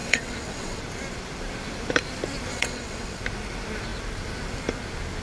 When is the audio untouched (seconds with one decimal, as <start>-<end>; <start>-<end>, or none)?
0.8-2.5; 3.2-5.2